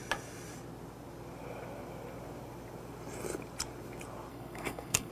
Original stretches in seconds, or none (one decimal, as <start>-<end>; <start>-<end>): 0.0-4.3